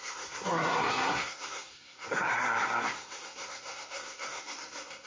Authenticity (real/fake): fake